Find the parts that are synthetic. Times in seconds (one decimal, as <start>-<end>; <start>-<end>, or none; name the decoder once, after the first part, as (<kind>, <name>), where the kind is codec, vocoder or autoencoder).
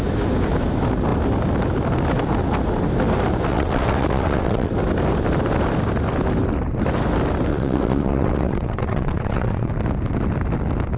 3.5-4.7 (vocoder, WaveNeXt); 7.5-9.7